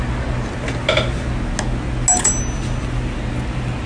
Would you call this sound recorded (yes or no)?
yes